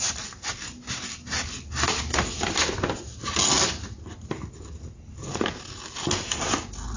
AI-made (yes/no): no